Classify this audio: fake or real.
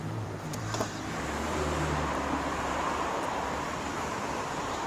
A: fake